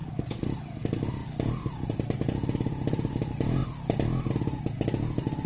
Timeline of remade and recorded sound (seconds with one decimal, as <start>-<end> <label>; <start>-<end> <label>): 0.0-0.6 remade; 0.6-5.5 recorded